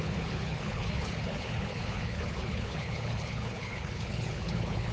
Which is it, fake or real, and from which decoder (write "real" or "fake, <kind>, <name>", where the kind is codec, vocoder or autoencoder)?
fake, codec, HILCodec